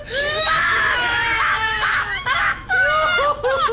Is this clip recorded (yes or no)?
no